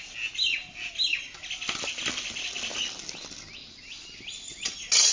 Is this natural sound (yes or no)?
yes